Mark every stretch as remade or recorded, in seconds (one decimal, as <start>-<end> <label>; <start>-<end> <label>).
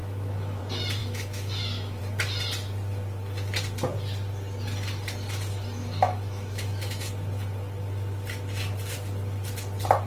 0.0-0.6 remade; 0.6-1.0 recorded; 1.0-2.0 remade; 2.0-5.8 recorded; 5.8-7.1 remade; 7.1-10.1 recorded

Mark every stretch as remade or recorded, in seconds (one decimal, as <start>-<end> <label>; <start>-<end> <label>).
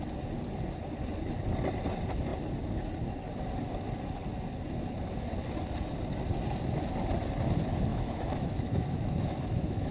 0.0-7.9 recorded; 7.9-9.9 remade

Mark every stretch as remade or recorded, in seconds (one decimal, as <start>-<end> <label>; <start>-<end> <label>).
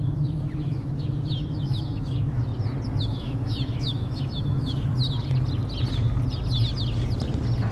0.0-2.5 remade; 2.5-3.0 recorded; 3.0-4.9 remade; 4.9-7.7 recorded